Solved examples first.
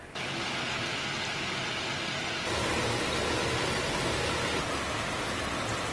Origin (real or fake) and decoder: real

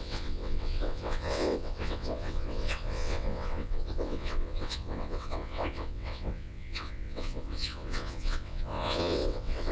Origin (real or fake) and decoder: fake, vocoder, WaveNeXt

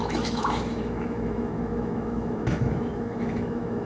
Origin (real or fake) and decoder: fake, autoencoder, DAC-VAE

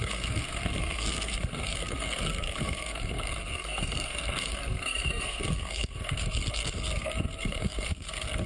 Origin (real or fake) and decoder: fake, codec, SNAC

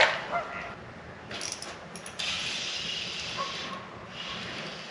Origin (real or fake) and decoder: real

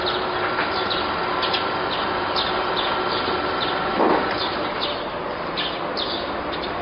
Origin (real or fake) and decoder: real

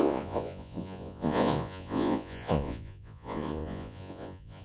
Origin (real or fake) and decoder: fake, vocoder, Vocos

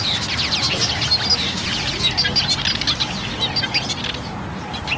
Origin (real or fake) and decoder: real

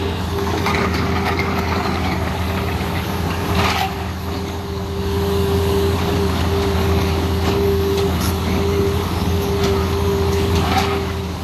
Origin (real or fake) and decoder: fake, codec, DAC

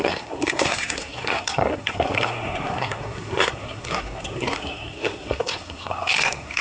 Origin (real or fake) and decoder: fake, codec, SNAC